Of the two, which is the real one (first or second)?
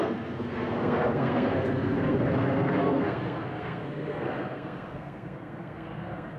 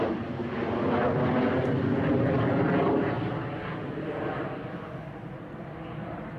second